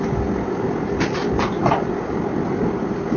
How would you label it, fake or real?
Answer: real